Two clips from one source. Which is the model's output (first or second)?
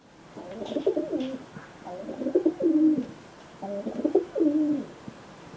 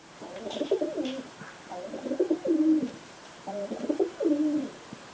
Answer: second